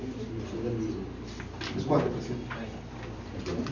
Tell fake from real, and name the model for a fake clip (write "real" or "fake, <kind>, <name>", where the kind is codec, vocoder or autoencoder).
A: real